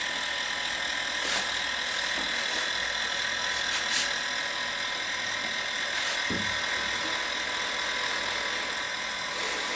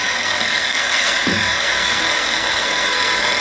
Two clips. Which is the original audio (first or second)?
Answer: first